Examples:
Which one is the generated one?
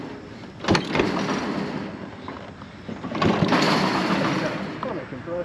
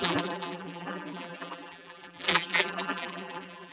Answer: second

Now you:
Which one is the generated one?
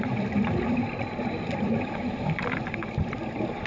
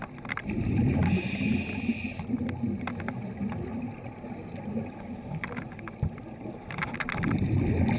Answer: first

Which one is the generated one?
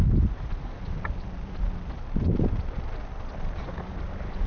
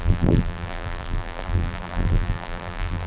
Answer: second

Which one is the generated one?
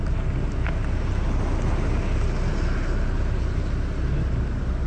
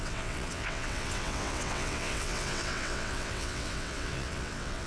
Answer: second